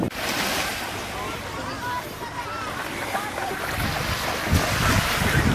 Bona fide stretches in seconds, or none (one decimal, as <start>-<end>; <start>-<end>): 0.0-5.5